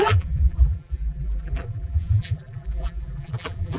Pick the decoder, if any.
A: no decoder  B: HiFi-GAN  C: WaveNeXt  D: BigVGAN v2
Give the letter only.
D